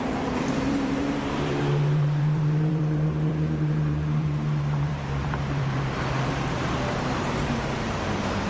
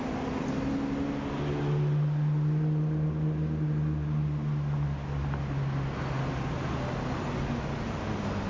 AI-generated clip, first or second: first